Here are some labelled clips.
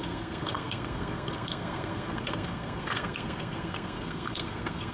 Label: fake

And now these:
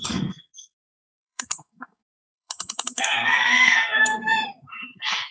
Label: fake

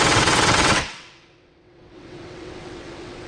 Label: fake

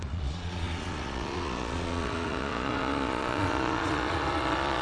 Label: fake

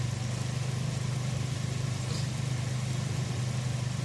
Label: real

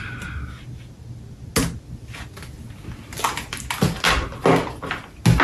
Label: real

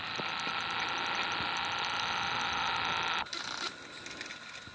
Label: real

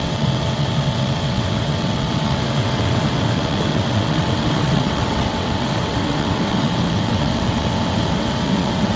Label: fake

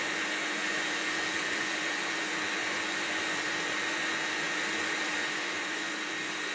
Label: fake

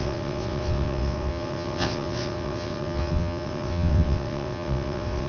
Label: fake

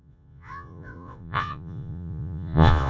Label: fake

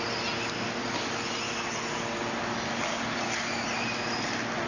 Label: real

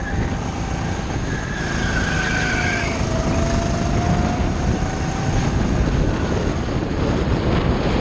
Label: real